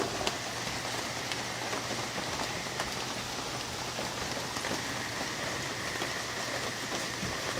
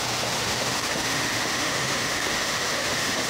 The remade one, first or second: second